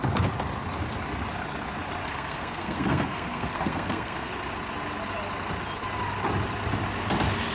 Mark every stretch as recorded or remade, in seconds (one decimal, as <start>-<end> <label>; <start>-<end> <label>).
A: 0.0-2.0 recorded; 2.0-4.3 remade; 4.3-7.5 recorded